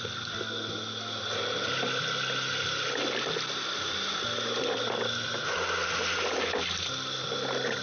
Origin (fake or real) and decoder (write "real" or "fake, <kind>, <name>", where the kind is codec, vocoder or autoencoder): real